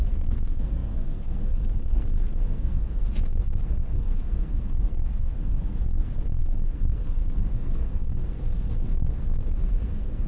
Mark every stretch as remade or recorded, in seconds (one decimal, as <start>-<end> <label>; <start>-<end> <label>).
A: 0.0-10.3 remade